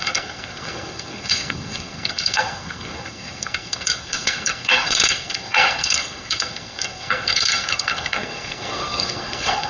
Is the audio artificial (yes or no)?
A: yes